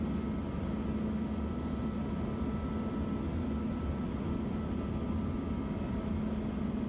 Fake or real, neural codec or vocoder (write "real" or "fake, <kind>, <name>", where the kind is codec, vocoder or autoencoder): real